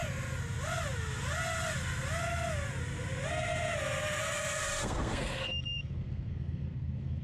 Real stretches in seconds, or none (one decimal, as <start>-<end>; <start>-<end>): 0.0-4.8